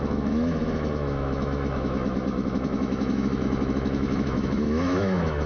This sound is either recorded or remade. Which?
remade